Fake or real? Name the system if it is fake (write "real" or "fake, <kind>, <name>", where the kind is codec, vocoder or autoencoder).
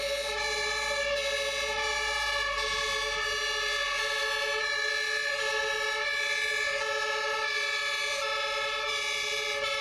real